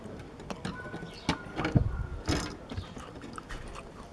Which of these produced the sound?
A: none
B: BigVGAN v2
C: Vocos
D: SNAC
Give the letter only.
A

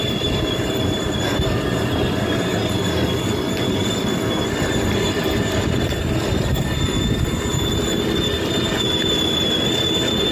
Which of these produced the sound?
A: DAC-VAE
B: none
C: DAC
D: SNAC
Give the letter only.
B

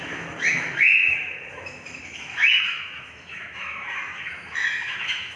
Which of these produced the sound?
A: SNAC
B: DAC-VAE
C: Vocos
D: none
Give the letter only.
B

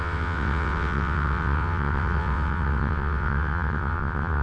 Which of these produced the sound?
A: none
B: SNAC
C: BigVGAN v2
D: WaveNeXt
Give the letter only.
D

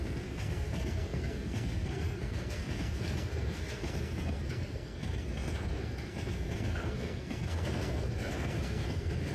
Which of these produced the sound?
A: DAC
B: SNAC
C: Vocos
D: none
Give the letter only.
B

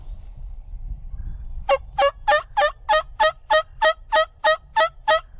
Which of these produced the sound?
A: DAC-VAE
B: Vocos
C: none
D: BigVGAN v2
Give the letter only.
C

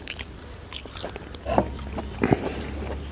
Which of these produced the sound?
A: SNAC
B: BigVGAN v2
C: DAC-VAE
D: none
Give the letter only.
B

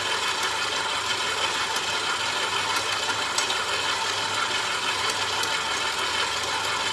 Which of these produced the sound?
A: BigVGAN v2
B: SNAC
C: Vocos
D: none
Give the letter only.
D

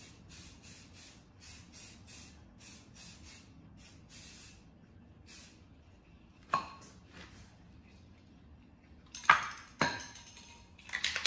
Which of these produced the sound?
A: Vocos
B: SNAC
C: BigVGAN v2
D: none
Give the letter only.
D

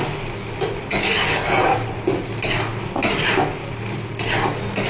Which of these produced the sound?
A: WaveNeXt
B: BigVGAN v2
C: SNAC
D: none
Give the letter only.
D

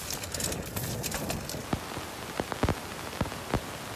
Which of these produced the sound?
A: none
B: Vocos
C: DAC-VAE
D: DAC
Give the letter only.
A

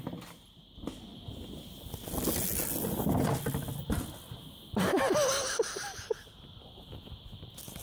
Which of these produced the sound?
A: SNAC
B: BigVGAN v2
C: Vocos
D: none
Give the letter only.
D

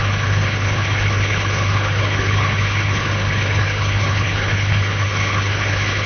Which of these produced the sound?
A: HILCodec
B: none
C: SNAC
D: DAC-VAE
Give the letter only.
A